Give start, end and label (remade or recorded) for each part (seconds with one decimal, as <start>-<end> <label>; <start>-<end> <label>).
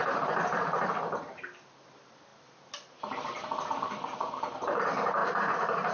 0.0-5.9 remade